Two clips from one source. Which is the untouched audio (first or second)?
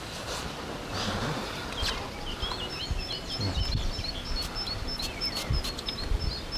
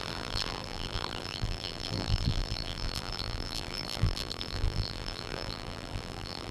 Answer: first